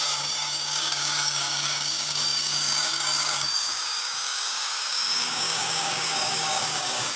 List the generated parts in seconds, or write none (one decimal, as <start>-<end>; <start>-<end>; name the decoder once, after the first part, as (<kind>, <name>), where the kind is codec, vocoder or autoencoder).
0.0-7.2 (codec, DAC)

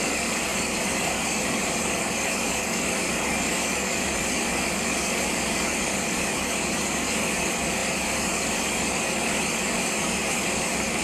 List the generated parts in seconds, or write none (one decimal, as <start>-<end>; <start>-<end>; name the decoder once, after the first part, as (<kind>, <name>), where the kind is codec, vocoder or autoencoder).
0.0-11.0 (codec, DAC)

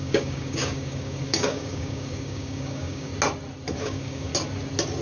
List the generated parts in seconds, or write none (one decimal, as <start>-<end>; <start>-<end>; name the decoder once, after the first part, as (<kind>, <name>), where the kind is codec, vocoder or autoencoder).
0.0-3.1 (codec, DAC); 3.8-4.3

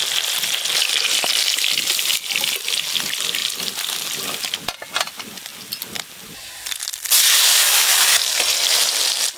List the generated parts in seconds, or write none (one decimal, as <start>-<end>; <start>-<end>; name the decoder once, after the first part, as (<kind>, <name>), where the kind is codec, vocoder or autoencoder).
7.5-8.4 (codec, DAC)

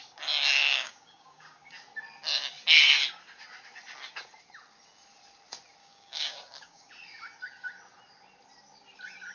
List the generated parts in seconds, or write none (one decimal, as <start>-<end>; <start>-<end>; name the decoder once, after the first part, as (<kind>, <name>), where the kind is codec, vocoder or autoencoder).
0.6-1.7 (codec, DAC); 5.8-6.9

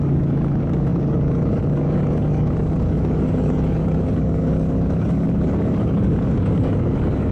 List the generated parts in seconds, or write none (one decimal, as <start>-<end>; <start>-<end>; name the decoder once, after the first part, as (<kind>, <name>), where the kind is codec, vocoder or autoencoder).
0.0-7.3 (codec, DAC)

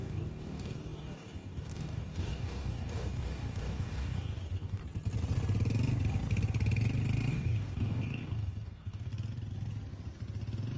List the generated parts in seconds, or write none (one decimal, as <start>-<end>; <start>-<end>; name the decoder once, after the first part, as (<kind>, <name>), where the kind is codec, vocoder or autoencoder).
0.0-4.8 (codec, DAC); 7.3-9.1

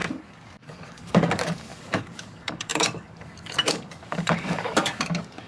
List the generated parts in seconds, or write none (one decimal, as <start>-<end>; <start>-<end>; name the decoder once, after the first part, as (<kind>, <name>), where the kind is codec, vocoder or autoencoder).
0.0-5.5 (codec, DAC)